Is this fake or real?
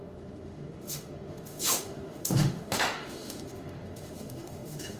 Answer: fake